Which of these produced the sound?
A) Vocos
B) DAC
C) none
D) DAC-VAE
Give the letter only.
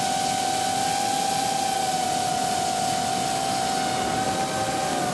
C